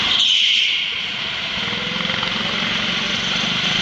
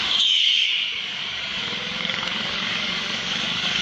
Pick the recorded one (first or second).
first